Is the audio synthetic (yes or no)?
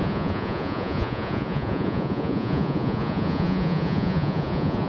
yes